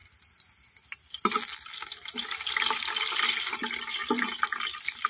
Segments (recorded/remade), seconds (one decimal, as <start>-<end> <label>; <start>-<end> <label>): 0.0-5.1 recorded